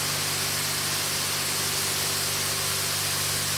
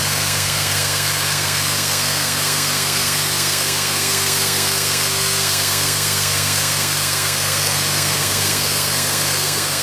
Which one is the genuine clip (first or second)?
first